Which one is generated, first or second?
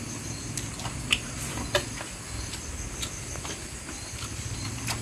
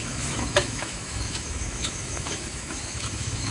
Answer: second